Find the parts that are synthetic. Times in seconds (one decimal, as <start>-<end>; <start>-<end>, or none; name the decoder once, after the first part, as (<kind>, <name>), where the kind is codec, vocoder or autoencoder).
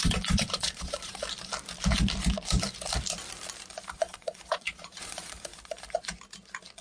0.0-1.2 (vocoder, Vocos); 3.9-5.5